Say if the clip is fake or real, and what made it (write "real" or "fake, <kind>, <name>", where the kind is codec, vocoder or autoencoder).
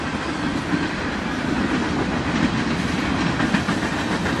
real